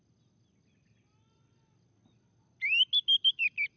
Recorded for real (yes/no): yes